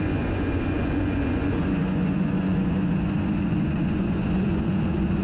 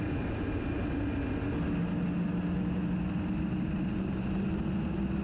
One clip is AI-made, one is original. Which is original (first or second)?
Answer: second